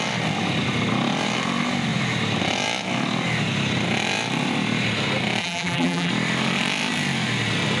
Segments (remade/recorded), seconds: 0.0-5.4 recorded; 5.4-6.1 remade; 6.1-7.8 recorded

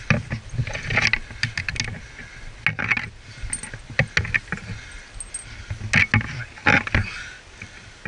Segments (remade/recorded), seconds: 0.0-8.1 recorded

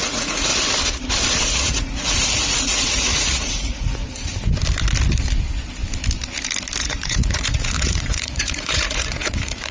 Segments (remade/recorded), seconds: 0.0-0.5 remade; 0.5-1.4 recorded; 1.4-4.0 remade; 4.0-6.8 recorded; 6.8-9.7 remade